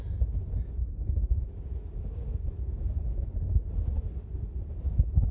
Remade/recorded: recorded